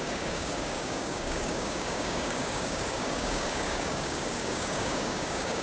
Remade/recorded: remade